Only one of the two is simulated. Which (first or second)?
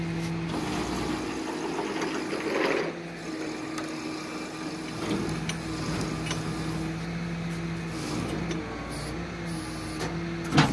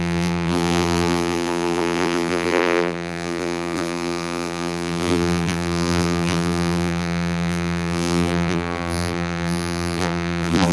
second